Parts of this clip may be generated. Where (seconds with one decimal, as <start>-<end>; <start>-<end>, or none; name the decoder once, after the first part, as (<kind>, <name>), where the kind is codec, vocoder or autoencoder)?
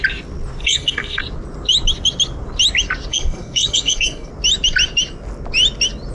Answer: 0.6-1.2 (codec, SNAC); 3.1-4.3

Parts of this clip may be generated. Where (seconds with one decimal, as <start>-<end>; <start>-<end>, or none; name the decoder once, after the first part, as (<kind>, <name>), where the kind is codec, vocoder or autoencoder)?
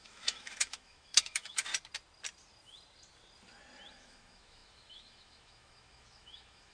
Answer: 0.0-1.7 (autoencoder, DAC-VAE); 3.9-6.7